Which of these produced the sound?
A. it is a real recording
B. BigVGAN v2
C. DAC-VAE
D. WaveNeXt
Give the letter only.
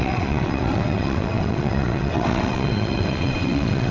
D